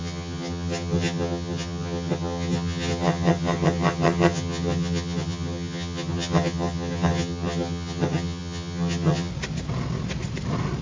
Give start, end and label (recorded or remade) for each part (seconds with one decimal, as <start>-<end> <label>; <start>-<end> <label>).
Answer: 0.0-9.3 remade; 9.3-10.8 recorded